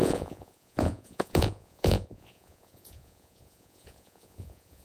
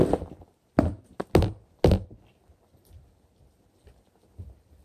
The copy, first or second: first